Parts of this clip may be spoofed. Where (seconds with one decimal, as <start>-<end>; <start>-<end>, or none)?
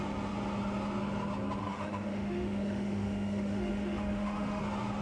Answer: 1.6-4.6